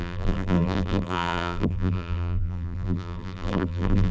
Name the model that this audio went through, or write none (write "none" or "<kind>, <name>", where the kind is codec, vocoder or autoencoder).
vocoder, BigVGAN v2